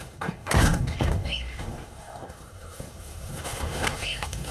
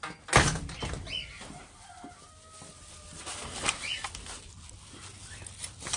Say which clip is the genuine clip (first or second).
second